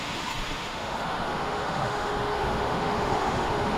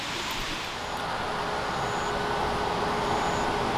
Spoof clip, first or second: first